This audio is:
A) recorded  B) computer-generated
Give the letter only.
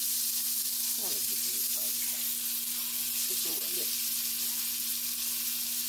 A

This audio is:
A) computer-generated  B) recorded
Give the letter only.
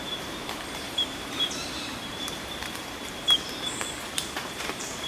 A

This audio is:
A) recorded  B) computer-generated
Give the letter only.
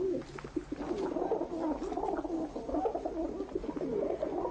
A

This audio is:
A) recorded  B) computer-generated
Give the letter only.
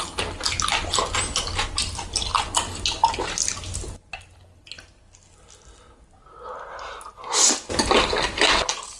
A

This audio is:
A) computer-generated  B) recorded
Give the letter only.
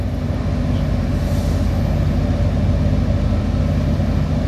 B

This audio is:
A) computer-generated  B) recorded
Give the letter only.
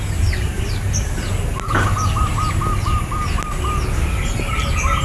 B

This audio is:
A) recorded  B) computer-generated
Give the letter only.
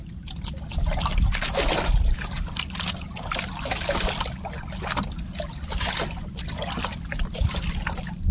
A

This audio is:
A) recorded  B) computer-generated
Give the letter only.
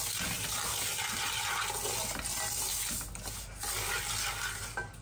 A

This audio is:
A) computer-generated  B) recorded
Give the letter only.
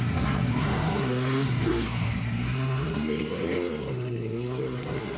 A